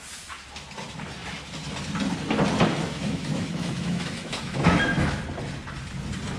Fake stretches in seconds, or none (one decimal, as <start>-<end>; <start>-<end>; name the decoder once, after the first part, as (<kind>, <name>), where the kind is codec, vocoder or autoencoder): 2.8-5.2 (autoencoder, DAC-VAE)